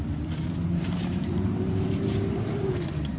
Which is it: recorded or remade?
remade